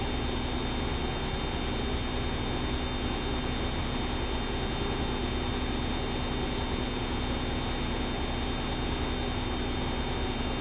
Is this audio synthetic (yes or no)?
no